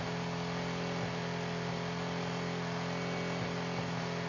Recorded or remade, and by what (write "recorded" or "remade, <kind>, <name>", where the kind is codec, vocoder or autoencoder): recorded